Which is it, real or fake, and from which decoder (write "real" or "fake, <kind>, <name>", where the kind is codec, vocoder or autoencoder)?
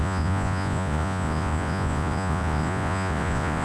fake, vocoder, Vocos